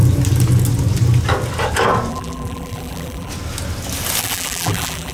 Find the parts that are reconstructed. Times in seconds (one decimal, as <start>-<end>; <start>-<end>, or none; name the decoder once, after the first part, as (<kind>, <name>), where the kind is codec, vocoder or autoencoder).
2.1-3.3 (vocoder, BigVGAN v2); 4.2-5.1